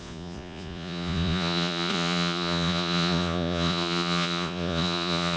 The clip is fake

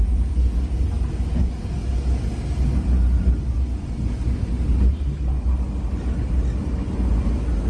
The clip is real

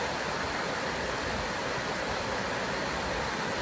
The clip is real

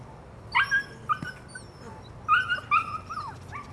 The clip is real